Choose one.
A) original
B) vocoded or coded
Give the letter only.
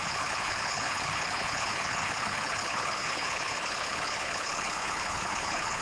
B